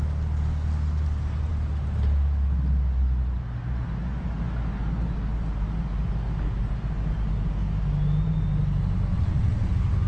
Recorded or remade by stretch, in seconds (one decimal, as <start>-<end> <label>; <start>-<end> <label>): 0.0-9.1 recorded; 9.1-9.7 remade; 9.7-10.1 recorded